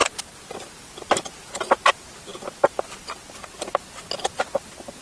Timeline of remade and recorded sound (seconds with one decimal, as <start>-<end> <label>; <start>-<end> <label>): 0.0-5.0 recorded